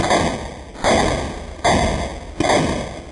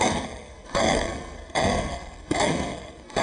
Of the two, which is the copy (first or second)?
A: second